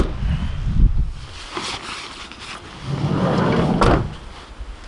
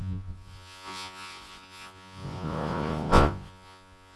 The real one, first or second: first